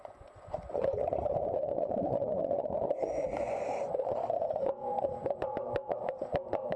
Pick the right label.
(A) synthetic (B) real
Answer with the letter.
A